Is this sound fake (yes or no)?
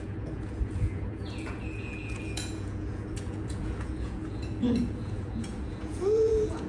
yes